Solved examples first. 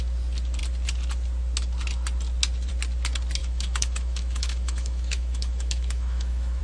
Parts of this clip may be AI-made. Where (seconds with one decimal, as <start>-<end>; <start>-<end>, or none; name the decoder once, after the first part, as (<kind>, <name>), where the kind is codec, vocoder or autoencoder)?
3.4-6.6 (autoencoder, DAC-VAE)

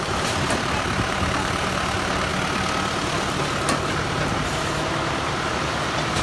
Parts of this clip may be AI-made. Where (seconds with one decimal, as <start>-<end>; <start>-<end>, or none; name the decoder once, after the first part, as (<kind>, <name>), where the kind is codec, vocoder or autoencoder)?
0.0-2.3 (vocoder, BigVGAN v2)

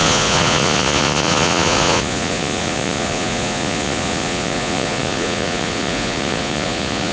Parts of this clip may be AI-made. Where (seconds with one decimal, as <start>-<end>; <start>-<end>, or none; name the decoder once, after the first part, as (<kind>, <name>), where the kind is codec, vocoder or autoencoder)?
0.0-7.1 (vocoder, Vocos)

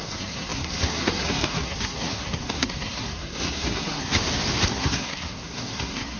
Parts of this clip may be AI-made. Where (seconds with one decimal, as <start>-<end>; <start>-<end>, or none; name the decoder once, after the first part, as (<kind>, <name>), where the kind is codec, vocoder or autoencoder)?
0.0-4.1 (codec, SNAC); 4.7-6.2

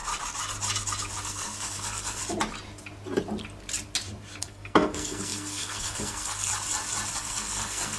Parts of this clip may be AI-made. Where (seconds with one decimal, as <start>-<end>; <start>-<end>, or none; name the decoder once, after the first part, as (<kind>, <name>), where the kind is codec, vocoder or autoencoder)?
1.2-2.2 (codec, SNAC); 4.4-6.5; 7.1-8.0